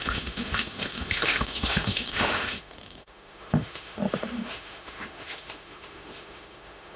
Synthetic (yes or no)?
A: yes